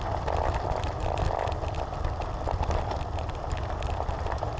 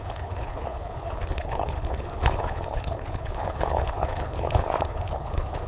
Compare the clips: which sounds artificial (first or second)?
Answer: second